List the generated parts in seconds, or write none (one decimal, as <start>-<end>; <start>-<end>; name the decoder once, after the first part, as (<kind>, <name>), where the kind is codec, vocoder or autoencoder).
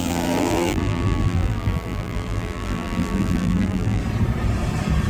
0.0-4.0 (vocoder, BigVGAN v2)